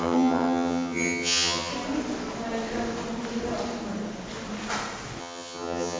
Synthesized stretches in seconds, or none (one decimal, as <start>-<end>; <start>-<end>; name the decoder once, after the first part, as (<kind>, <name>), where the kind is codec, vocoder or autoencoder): 0.0-1.7 (vocoder, HiFi-GAN); 5.2-6.0